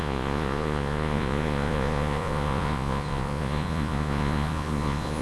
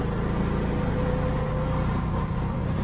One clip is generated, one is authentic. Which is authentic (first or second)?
second